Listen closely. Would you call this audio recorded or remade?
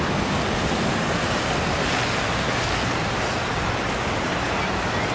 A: recorded